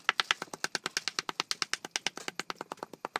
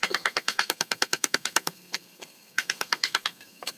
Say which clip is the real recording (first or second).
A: first